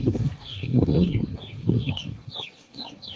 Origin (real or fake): fake